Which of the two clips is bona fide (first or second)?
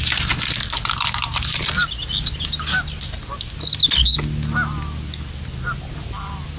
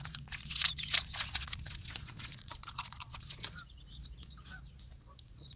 first